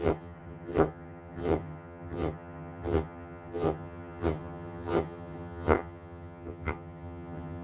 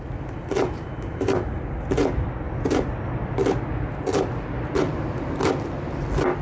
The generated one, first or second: first